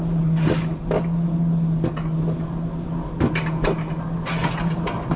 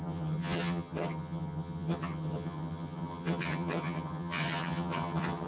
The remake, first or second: second